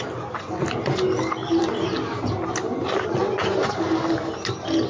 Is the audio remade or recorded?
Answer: recorded